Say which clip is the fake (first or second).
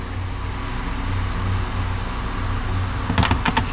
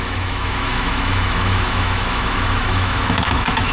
second